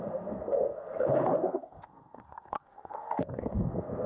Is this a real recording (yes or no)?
no